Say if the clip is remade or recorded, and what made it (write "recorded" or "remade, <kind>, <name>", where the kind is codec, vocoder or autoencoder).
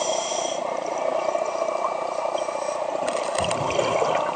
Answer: recorded